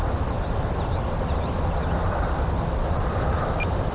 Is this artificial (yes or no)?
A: no